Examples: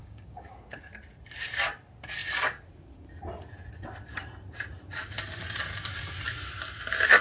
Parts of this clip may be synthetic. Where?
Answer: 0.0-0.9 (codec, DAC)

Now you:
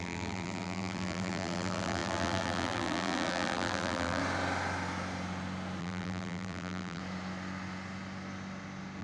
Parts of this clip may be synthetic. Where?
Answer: 0.0-4.2 (vocoder, BigVGAN v2); 5.8-7.0

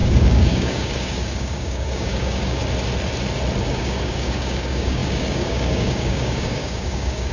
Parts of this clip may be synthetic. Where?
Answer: 0.0-2.6 (codec, DAC); 3.6-7.3

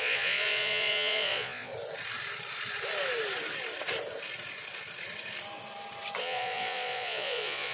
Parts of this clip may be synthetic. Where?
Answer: 0.0-1.7 (vocoder, Vocos); 6.2-7.7

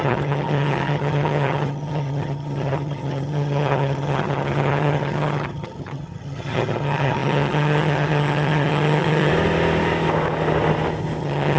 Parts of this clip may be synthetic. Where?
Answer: 0.0-9.3 (vocoder, HiFi-GAN); 11.2-11.6

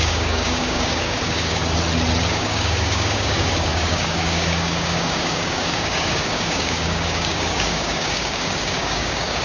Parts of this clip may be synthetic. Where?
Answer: 0.0-1.6 (codec, DAC); 2.3-9.4

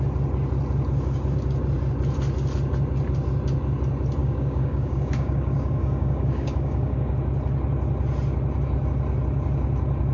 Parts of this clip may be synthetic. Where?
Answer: 4.2-7.1 (codec, DAC)

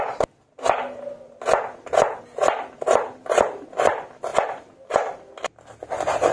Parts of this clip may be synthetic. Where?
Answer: none